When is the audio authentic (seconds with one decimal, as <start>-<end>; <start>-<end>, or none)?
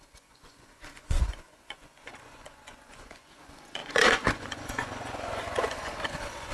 none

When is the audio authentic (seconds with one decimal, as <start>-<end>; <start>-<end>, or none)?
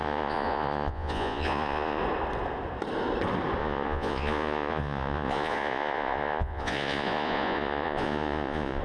2.0-3.6